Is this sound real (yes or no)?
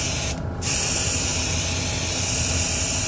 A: yes